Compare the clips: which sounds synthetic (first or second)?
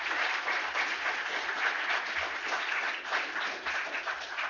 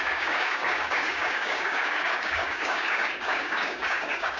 second